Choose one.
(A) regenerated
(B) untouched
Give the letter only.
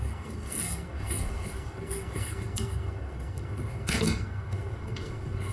A